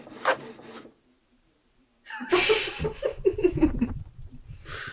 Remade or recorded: remade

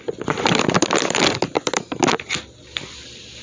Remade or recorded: recorded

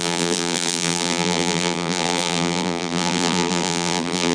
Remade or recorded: remade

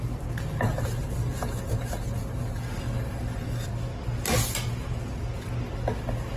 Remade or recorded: recorded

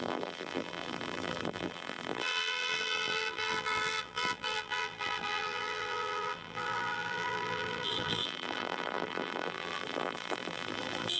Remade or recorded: remade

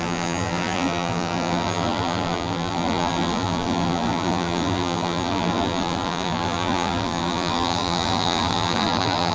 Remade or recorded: remade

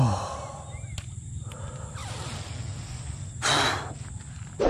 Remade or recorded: recorded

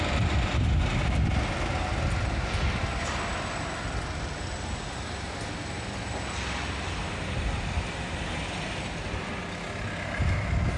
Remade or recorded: recorded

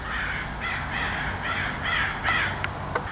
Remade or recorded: recorded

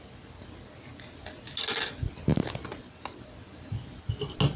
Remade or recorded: recorded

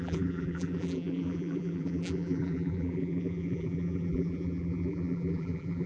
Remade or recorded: remade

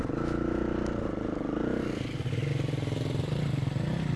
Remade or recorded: recorded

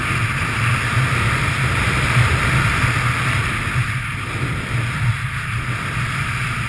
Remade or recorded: remade